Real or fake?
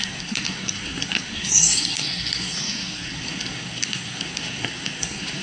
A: fake